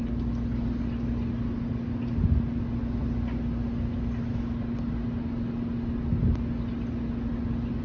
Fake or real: real